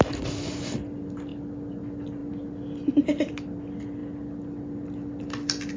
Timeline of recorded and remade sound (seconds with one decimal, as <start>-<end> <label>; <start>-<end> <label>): 0.0-5.8 recorded